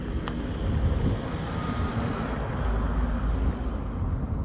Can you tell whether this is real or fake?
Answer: real